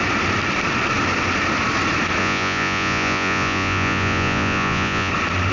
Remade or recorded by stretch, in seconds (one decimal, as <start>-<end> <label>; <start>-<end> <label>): 0.0-2.2 recorded; 2.2-5.1 remade; 5.1-5.5 recorded

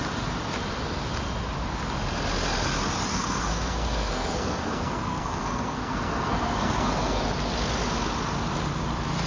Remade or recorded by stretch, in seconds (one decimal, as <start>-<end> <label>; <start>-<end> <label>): 0.0-3.1 recorded; 3.1-7.2 remade; 7.2-9.3 recorded